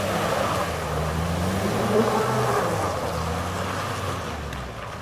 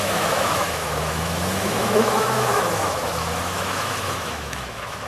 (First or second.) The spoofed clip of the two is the second